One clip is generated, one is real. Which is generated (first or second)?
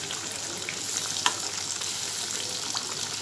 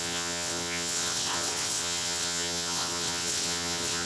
second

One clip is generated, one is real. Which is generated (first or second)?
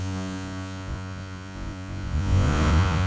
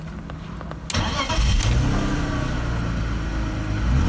first